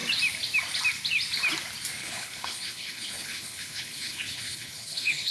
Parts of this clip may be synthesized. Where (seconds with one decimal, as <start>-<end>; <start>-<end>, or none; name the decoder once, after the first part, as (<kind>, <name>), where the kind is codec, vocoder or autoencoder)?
2.0-5.3 (codec, HILCodec)